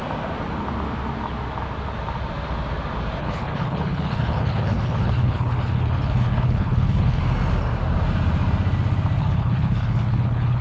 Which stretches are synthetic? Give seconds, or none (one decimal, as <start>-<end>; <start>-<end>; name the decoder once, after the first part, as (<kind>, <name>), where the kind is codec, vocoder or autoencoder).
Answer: 3.2-7.2 (codec, HILCodec); 9.2-10.6

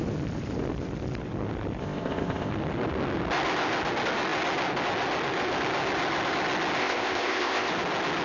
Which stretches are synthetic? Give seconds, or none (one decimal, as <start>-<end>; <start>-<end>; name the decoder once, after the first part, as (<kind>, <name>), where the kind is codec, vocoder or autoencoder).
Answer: 1.8-2.5 (codec, ZipCodec); 6.8-7.7

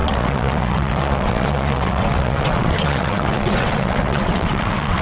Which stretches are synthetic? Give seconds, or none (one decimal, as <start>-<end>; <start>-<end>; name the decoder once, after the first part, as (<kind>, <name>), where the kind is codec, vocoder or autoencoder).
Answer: 0.0-5.0 (vocoder, WaveNeXt)

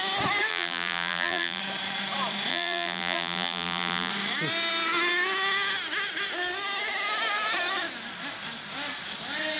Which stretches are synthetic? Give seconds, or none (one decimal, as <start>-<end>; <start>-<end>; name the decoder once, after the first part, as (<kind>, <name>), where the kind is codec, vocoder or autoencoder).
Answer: 0.5-1.6 (vocoder, BigVGAN v2); 2.5-4.1

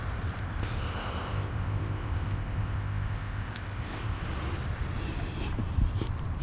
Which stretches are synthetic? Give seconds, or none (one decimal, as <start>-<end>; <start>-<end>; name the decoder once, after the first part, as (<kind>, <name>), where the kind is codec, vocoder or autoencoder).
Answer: 0.4-4.2 (codec, ZipCodec)